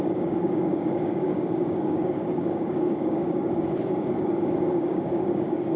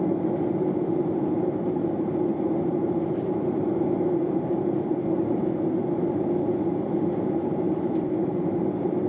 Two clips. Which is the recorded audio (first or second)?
second